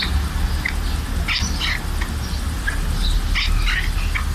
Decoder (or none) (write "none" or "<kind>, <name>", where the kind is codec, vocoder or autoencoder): none